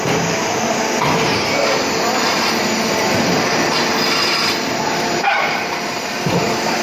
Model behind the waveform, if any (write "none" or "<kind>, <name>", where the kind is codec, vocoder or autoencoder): vocoder, BigVGAN v2